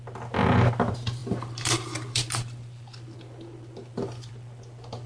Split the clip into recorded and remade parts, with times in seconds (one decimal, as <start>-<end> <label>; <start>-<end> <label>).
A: 0.0-1.2 recorded; 1.2-4.3 remade; 4.3-5.1 recorded